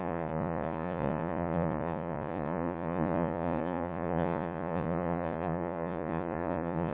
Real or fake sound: fake